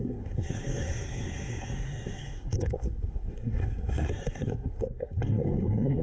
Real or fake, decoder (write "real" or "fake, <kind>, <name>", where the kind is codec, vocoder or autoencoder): fake, codec, SNAC